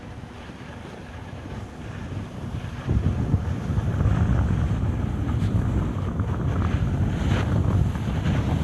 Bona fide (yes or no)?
yes